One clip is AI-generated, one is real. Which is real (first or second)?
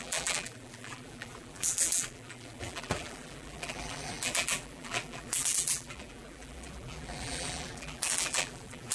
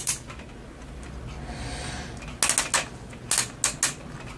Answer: second